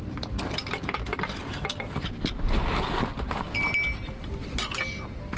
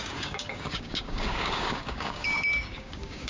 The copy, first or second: second